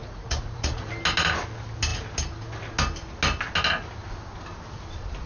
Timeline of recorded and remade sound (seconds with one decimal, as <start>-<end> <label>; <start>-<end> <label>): 0.0-0.9 remade; 0.9-5.3 recorded